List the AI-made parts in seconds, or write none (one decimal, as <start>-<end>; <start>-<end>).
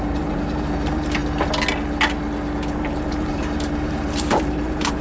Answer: 0.0-1.2; 2.7-5.0